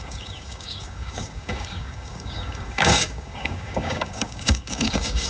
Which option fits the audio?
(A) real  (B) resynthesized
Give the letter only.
B